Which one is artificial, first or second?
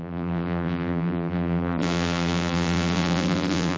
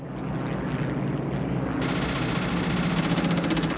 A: first